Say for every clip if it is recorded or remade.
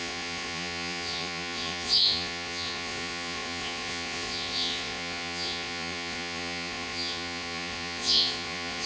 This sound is remade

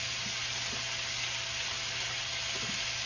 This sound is recorded